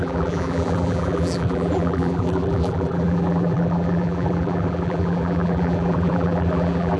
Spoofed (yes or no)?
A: yes